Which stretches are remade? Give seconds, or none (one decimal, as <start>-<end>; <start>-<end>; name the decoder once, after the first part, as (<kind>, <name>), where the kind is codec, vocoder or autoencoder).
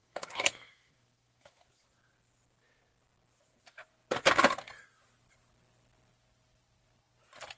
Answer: 0.0-1.7 (autoencoder, DAC-VAE)